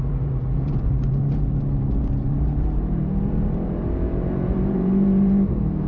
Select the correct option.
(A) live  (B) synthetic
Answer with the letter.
B